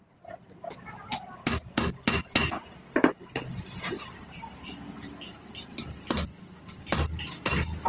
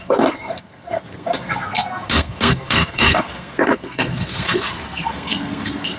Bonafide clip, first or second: first